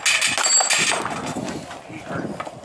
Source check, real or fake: real